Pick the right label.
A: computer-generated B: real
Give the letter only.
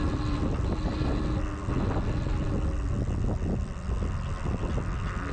B